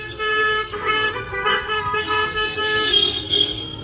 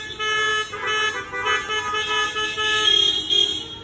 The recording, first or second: second